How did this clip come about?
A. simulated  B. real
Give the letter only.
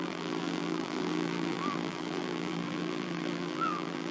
A